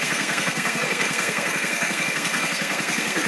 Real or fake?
fake